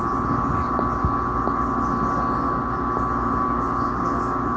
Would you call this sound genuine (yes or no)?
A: yes